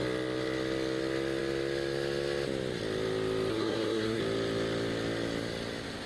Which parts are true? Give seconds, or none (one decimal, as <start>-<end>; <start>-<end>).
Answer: 0.0-3.5; 4.2-6.1